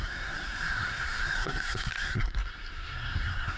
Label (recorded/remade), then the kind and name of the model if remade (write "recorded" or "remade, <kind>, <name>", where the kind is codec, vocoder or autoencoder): remade, codec, SNAC